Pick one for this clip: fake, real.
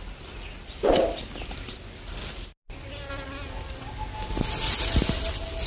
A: real